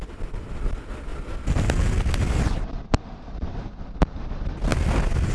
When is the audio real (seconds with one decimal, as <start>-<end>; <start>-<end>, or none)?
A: 0.0-5.3